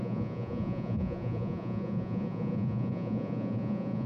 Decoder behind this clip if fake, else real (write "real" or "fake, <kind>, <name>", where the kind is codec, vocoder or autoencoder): fake, vocoder, Vocos